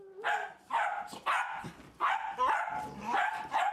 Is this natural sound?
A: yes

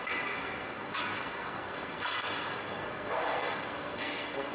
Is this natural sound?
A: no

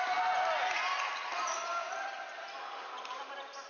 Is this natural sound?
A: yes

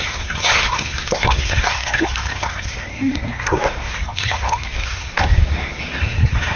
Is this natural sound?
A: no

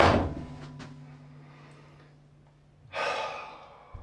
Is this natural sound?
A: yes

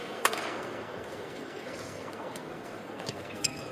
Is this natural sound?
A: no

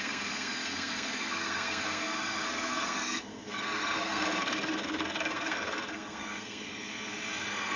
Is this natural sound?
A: no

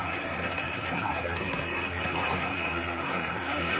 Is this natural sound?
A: no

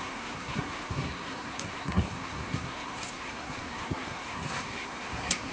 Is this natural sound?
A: no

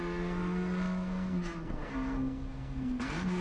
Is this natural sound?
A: no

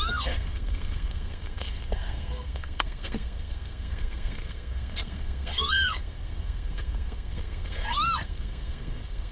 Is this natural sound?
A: no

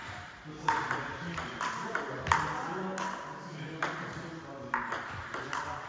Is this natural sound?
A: yes